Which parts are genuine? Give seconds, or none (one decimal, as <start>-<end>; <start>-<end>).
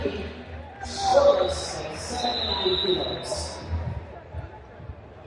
0.0-5.3